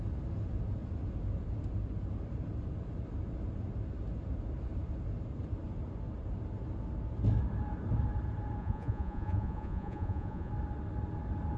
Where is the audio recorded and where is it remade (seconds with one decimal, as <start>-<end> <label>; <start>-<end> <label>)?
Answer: 0.0-8.6 recorded; 8.6-10.5 remade; 10.5-11.6 recorded